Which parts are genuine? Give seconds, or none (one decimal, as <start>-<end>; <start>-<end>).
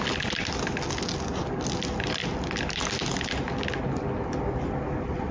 0.0-5.3